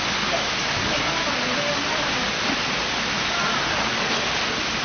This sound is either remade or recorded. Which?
recorded